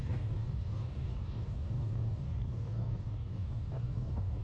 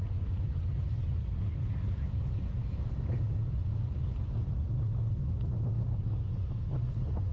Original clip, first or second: second